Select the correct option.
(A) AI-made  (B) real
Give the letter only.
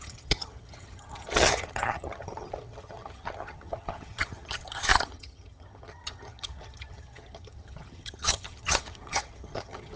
A